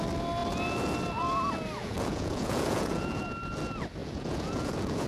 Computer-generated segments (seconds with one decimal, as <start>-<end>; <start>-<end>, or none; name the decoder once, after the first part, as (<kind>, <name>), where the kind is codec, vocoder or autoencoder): 1.8-3.2 (vocoder, Vocos); 4.0-5.1